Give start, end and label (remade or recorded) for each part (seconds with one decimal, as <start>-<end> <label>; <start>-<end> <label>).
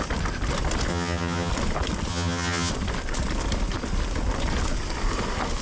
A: 0.0-0.9 recorded; 0.9-1.5 remade; 1.5-2.1 recorded; 2.1-2.7 remade; 2.7-5.6 recorded